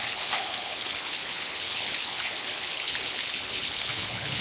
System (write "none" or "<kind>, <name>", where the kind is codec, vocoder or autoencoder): codec, HILCodec